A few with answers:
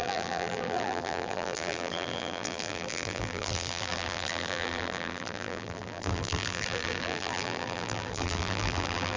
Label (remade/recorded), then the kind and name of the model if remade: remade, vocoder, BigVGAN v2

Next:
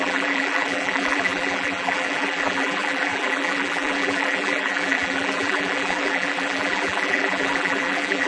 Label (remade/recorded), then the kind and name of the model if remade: remade, vocoder, BigVGAN v2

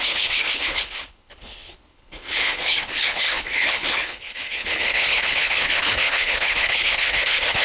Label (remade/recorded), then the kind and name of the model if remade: remade, codec, HILCodec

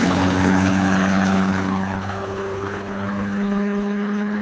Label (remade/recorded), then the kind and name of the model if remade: remade, codec, HILCodec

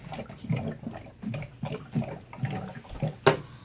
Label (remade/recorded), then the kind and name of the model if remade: recorded